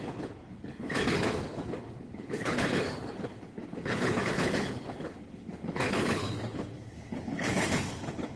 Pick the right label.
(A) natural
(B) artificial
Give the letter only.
B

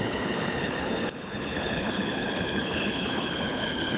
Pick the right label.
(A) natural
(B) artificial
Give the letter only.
B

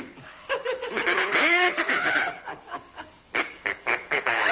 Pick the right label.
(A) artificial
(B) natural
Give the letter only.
A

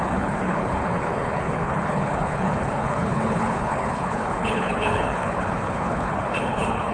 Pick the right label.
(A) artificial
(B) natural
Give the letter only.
A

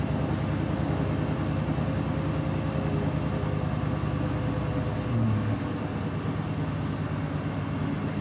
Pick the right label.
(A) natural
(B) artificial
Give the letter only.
A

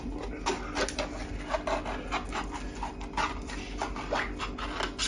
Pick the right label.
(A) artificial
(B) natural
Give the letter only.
B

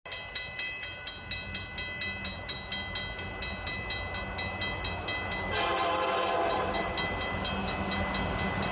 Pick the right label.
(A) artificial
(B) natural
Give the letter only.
B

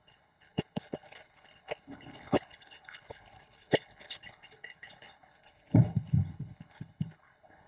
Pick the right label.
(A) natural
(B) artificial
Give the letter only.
B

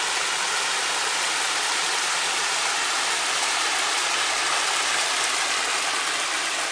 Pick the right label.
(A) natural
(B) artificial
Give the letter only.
A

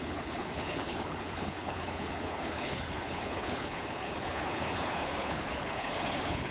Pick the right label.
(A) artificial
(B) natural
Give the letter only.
A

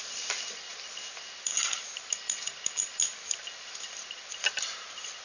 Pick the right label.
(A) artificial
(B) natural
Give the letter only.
B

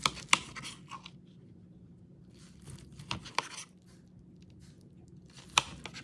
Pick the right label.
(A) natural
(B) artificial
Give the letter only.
A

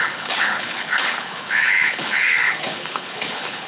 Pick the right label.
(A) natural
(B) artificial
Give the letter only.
B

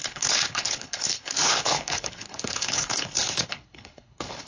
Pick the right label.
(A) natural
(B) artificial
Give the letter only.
B